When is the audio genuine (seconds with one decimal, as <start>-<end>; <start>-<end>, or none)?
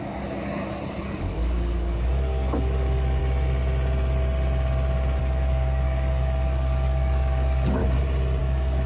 3.2-5.2; 7.8-8.4